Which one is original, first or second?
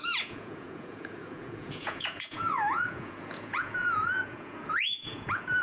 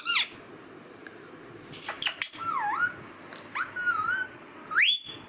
second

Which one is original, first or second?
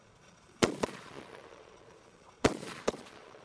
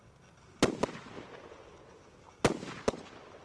second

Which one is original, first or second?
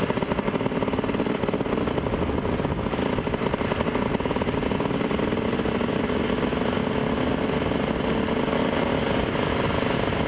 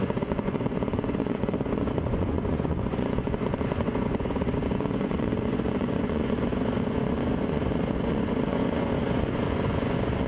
first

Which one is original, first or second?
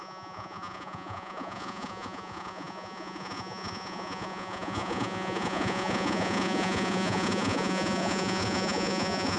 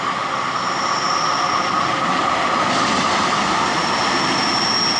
second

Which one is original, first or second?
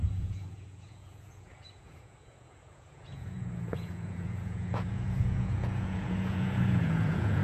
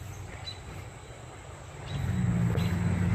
second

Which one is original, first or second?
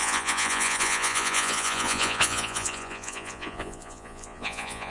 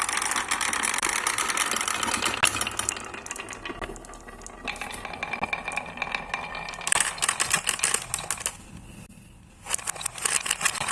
second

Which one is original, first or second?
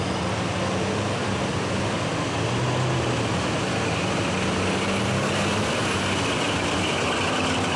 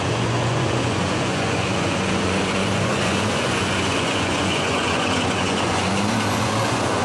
first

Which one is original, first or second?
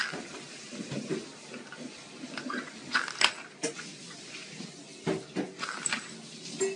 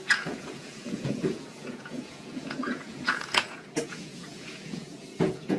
first